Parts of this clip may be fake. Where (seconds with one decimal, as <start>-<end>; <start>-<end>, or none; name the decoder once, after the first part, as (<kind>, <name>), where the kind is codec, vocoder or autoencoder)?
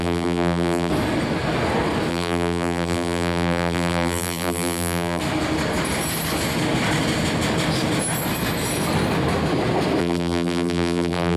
0.0-0.9 (vocoder, BigVGAN v2); 2.1-5.2; 10.0-11.4